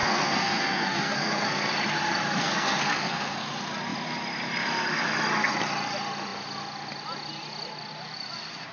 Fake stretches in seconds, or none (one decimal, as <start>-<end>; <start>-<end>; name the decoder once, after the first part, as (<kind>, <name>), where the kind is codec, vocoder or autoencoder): 0.0-1.7 (codec, SNAC); 2.4-3.5